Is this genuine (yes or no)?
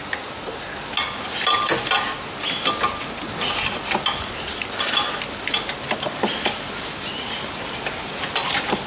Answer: yes